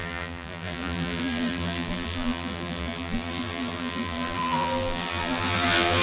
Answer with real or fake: fake